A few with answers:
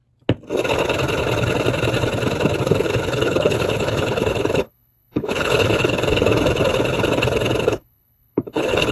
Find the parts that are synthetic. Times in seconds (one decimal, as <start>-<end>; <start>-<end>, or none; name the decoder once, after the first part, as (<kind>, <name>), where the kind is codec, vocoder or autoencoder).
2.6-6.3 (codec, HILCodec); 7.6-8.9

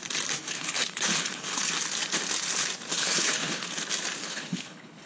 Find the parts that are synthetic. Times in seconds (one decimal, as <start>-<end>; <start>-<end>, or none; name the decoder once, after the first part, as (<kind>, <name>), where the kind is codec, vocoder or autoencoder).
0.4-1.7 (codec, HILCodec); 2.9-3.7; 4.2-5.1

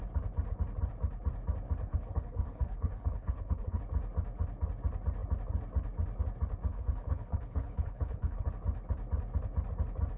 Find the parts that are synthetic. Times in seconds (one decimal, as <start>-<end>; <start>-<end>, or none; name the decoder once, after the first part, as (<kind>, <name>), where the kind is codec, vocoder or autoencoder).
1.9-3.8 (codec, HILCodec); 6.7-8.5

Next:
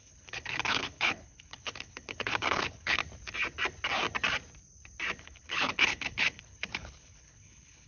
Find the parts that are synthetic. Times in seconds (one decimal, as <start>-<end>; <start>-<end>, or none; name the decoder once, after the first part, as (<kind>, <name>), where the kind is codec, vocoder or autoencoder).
0.0-3.0 (codec, HILCodec); 5.2-7.9

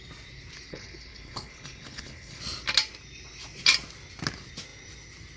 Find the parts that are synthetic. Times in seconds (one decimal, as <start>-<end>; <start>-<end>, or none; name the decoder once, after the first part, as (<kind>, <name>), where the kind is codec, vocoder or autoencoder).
0.7-2.4 (codec, HILCodec)

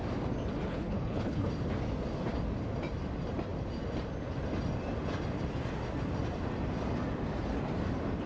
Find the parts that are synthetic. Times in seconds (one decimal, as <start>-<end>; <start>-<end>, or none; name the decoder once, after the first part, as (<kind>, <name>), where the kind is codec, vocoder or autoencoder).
0.7-1.5 (codec, HILCodec)

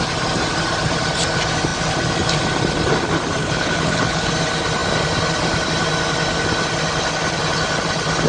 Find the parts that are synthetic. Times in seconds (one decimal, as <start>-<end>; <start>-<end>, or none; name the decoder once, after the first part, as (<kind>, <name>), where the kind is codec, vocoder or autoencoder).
3.4-4.3 (codec, HILCodec)

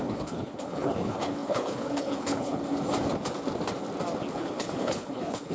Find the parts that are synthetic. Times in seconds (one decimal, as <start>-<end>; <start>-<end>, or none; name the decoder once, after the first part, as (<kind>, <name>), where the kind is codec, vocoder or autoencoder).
0.0-2.6 (codec, HILCodec); 4.3-5.5